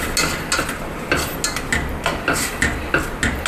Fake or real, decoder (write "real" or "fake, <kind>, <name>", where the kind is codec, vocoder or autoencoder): real